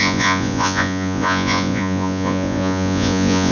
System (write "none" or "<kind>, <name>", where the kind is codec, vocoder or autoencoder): vocoder, Vocos